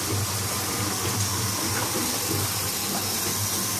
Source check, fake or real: real